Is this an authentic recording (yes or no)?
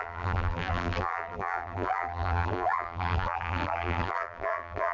no